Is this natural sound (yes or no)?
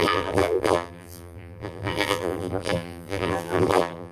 no